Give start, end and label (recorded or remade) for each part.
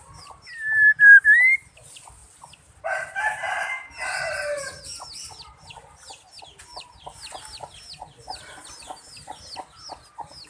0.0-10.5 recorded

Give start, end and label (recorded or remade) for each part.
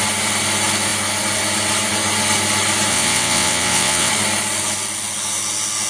0.0-2.9 recorded; 2.9-4.1 remade; 4.1-5.9 recorded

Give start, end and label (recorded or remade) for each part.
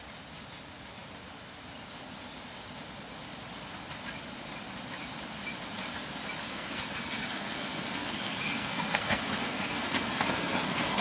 0.0-6.5 recorded; 6.5-11.0 remade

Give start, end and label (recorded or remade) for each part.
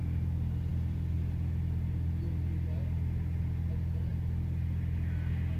0.0-5.6 recorded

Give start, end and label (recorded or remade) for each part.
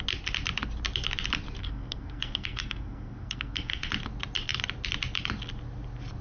0.0-1.6 recorded; 1.6-3.9 remade; 3.9-6.2 recorded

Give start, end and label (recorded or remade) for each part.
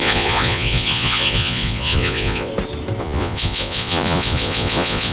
0.0-2.5 remade; 2.5-3.0 recorded; 3.0-5.1 remade